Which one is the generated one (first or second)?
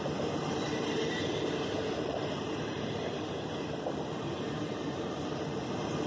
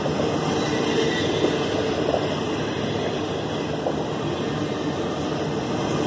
first